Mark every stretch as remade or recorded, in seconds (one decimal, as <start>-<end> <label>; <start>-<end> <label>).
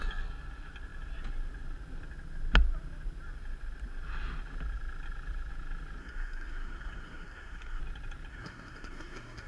0.0-6.0 recorded; 6.0-7.8 remade; 7.8-8.3 recorded; 8.3-9.5 remade